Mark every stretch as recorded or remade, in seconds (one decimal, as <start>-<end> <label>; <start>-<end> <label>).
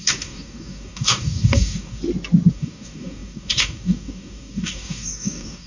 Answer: 0.0-2.0 remade; 2.0-2.5 recorded; 2.5-5.7 remade